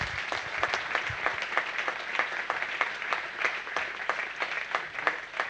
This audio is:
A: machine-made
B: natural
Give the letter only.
B